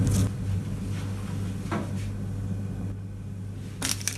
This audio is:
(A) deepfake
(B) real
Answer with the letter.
B